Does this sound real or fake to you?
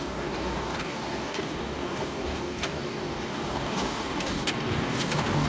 fake